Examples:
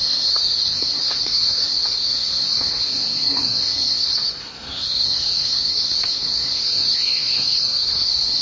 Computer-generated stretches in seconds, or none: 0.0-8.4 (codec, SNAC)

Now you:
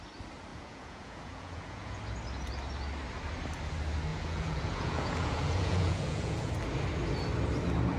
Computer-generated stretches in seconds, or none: 0.5-2.0 (vocoder, Vocos); 4.1-6.5